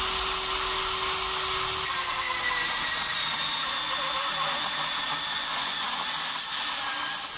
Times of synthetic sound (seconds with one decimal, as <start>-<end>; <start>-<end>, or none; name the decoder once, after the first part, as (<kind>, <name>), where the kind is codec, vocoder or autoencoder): 5.4-6.0 (vocoder, Vocos)

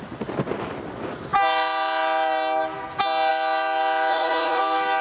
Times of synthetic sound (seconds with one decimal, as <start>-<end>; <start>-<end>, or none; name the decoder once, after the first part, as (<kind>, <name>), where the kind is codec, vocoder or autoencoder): 4.1-4.6 (vocoder, Vocos)

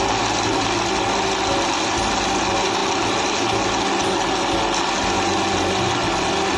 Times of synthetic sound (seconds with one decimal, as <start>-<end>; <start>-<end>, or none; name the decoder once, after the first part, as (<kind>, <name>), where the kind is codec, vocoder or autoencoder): none

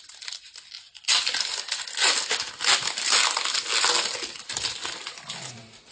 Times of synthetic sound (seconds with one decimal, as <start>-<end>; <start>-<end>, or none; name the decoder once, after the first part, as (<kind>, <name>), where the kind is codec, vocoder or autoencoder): none

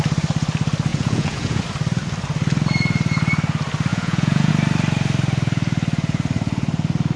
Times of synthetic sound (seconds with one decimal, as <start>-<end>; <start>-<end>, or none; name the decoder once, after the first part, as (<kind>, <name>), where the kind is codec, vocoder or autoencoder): 0.9-1.6 (vocoder, Vocos); 3.9-4.5

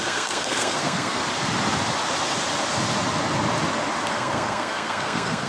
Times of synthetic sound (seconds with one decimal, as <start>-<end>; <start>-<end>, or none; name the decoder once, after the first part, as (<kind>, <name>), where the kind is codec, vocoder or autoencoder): 0.0-1.2 (codec, SNAC); 4.1-5.5

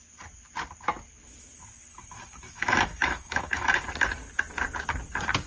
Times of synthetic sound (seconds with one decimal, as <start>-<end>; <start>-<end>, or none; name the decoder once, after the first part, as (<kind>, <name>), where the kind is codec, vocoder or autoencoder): 1.9-3.8 (autoencoder, DAC-VAE)